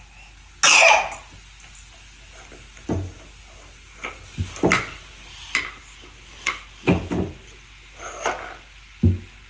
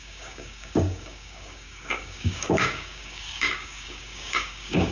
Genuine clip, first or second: first